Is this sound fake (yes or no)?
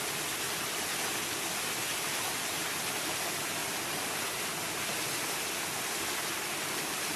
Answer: no